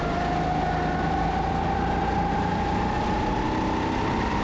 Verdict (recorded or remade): recorded